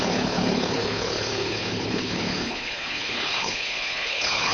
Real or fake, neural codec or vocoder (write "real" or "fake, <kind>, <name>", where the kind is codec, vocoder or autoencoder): fake, codec, HILCodec